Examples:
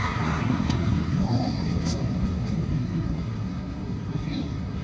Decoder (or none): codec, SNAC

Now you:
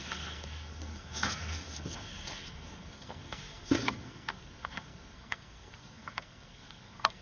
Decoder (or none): codec, SNAC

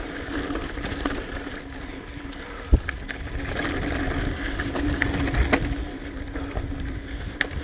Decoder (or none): none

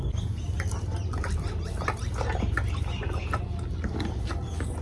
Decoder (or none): none